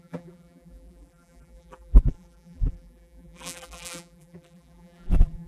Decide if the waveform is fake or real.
fake